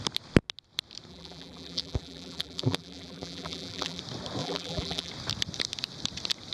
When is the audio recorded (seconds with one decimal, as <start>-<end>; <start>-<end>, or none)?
0.0-1.1; 4.0-4.4; 5.1-6.5